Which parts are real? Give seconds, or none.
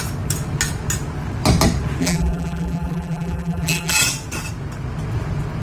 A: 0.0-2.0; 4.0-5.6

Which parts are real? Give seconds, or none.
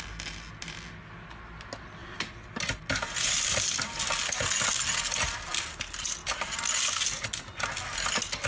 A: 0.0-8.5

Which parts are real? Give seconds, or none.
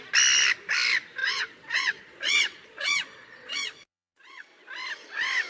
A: 0.0-1.2; 4.5-5.5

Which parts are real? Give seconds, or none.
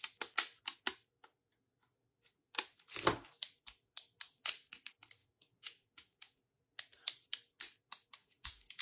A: 0.0-5.2; 6.6-8.2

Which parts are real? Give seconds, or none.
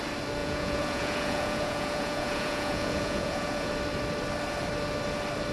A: 0.0-0.4; 3.7-5.5